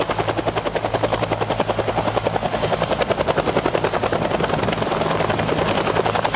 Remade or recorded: recorded